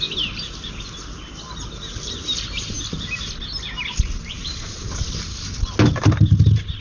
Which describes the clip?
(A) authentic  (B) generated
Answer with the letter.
A